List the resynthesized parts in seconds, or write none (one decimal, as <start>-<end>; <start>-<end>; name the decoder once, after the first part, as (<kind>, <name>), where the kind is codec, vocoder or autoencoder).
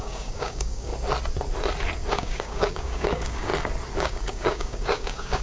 0.0-0.9 (codec, DAC); 2.1-3.5; 4.0-5.4